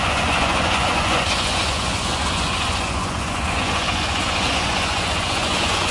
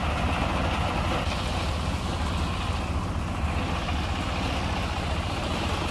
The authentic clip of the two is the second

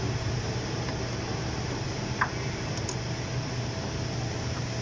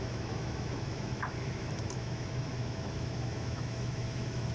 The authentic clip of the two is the first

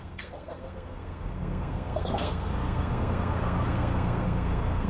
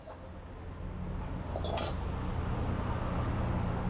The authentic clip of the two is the second